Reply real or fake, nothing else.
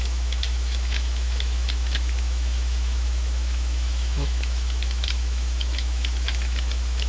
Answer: fake